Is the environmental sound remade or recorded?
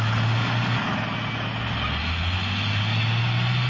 recorded